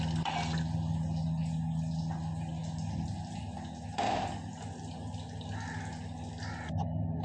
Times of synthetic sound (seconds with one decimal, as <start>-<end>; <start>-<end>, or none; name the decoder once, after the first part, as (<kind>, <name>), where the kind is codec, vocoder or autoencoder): none